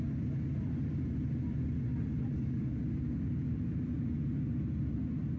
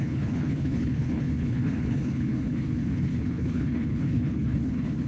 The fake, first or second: second